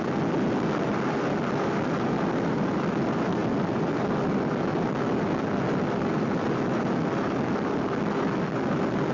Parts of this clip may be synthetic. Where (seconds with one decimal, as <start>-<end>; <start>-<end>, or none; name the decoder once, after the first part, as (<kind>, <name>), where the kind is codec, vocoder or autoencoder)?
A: none